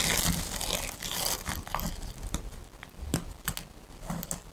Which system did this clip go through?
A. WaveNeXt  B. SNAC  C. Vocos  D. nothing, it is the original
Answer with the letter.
D